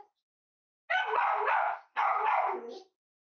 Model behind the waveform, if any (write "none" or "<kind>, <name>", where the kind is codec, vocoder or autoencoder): none